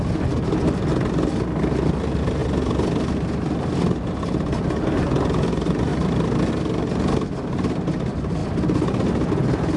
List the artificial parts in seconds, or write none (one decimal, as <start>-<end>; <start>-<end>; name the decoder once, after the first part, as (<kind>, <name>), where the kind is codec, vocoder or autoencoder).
none